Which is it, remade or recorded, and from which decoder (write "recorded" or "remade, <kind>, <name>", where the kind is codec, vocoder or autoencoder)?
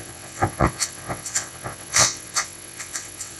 remade, vocoder, WaveNeXt